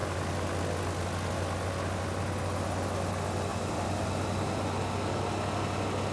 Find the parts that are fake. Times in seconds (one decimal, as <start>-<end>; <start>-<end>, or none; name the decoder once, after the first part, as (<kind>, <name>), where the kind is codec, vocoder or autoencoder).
3.5-4.7 (vocoder, BigVGAN v2)